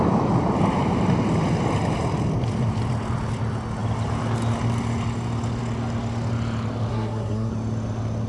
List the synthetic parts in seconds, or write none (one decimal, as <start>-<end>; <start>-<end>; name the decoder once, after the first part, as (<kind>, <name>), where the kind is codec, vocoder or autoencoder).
6.9-7.5 (codec, SNAC)